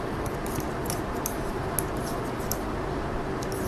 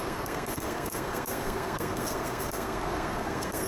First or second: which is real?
first